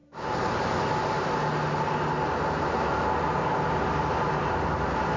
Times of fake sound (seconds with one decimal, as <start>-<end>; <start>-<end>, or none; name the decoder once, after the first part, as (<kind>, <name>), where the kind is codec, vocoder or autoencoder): none